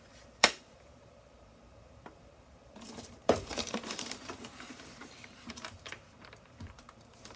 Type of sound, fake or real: fake